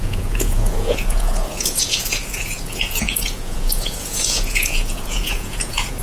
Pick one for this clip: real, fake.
fake